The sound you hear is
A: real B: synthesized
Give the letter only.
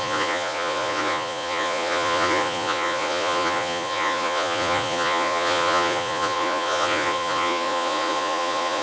B